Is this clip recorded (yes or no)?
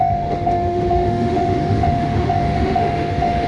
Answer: no